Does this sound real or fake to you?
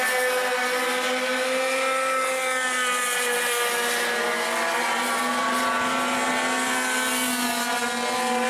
real